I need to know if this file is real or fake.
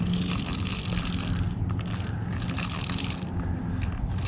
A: real